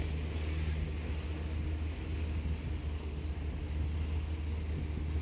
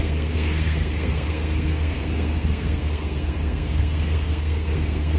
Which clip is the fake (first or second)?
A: second